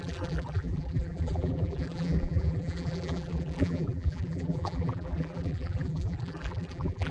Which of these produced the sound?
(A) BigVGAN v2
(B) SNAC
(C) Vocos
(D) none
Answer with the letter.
A